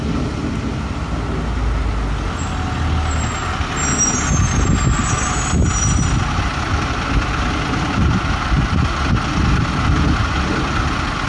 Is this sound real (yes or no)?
yes